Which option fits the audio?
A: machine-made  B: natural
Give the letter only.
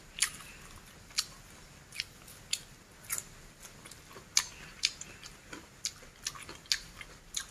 B